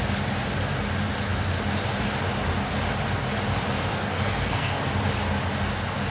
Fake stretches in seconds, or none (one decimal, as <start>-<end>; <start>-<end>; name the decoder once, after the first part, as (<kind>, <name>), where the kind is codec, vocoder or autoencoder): 3.9-4.8 (codec, SNAC)